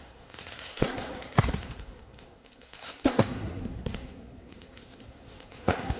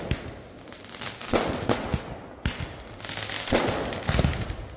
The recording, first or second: second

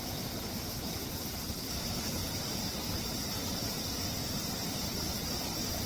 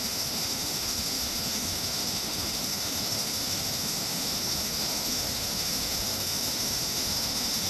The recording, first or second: first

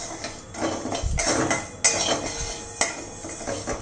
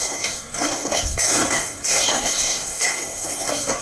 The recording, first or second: first